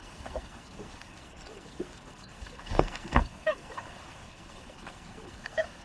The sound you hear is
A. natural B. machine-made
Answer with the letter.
B